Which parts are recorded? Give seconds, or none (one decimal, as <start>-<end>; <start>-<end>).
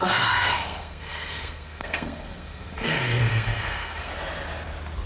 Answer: 4.1-5.1